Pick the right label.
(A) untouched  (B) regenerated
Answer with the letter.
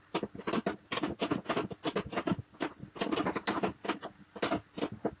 B